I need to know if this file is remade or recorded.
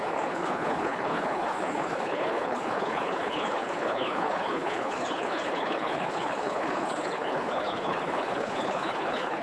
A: remade